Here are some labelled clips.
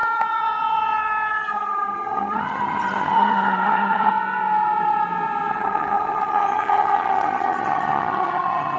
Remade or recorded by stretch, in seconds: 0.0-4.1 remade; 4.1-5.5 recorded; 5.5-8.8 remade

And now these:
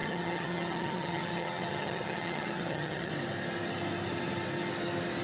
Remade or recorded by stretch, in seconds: 0.0-3.1 remade; 3.1-5.2 recorded